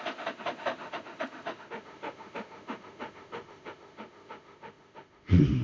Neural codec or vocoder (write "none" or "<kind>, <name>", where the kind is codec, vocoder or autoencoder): autoencoder, DAC-VAE